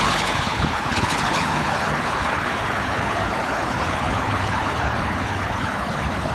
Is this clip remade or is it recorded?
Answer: remade